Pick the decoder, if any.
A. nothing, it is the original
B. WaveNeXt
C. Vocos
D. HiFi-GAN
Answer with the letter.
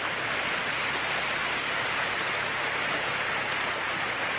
A